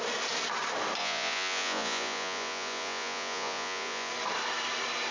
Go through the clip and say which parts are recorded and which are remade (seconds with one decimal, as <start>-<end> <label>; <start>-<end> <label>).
0.0-1.0 recorded; 1.0-4.1 remade; 4.1-5.1 recorded